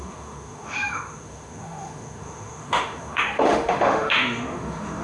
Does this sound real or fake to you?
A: fake